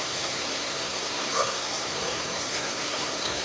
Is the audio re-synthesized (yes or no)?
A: yes